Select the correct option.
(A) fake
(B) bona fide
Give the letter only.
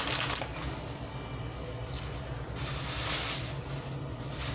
B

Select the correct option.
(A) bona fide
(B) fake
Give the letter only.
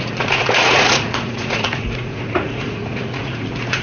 B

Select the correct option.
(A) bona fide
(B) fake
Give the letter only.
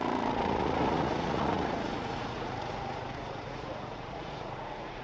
B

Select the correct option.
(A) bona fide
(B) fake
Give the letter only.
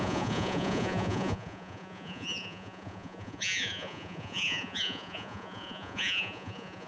B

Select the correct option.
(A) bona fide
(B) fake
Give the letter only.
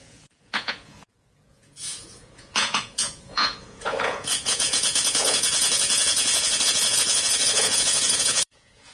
B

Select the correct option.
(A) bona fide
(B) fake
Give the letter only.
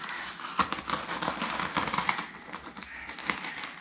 A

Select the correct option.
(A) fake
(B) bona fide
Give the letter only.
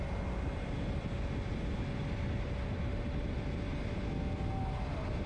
B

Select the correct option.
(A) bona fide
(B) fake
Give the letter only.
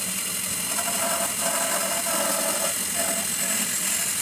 A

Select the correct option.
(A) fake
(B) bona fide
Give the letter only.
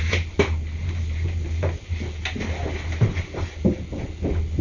B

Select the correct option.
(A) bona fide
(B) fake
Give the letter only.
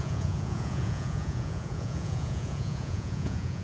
B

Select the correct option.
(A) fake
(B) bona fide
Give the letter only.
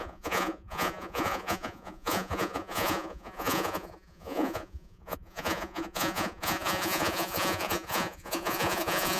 A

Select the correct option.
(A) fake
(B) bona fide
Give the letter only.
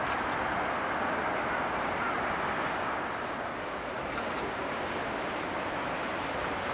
B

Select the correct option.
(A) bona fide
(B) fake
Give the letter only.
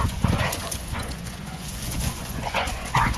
B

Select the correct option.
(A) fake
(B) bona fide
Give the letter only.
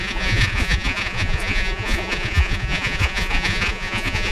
A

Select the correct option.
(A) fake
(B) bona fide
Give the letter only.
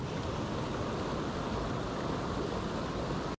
B